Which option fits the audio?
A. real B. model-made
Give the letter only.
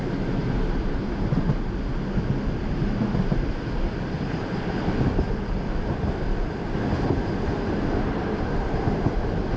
A